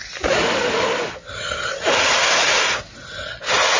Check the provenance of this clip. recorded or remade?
recorded